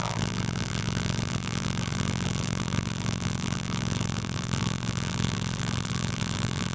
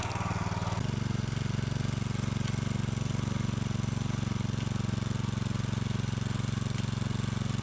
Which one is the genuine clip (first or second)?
second